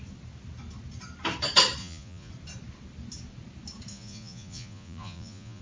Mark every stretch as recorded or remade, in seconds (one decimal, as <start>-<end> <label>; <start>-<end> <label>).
0.0-1.8 recorded; 1.8-2.3 remade; 2.3-3.9 recorded; 3.9-5.6 remade